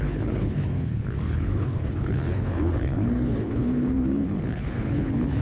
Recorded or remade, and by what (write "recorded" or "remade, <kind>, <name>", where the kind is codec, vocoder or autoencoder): remade, codec, HILCodec